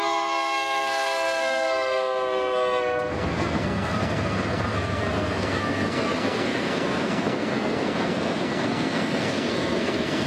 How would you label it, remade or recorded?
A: remade